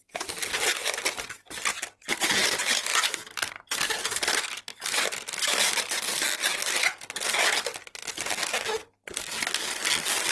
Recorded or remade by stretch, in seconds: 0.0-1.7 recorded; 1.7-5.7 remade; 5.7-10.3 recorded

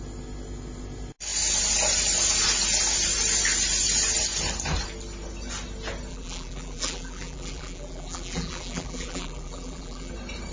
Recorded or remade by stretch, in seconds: 0.0-6.1 recorded; 6.1-10.1 remade; 10.1-10.5 recorded

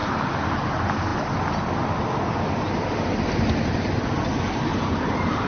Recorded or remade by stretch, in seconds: 0.0-0.5 remade; 0.5-4.7 recorded; 4.7-5.5 remade

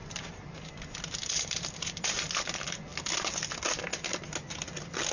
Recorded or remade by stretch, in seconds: 0.0-0.7 remade; 0.7-1.2 recorded; 1.2-2.1 remade; 2.1-5.1 recorded